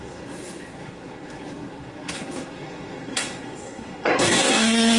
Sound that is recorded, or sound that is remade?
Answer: remade